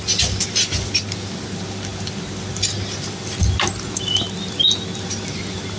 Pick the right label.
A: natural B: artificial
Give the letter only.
A